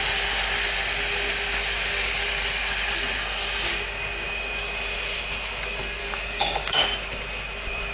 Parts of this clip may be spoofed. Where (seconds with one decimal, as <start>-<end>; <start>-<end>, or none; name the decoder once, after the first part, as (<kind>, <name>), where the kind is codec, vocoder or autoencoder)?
6.0-6.8 (codec, DAC)